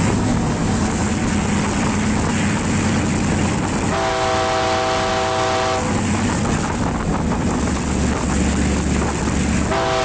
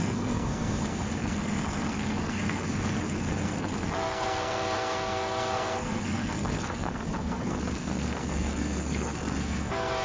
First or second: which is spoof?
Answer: second